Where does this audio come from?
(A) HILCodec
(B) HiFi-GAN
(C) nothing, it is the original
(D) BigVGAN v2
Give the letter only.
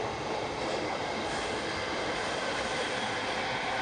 C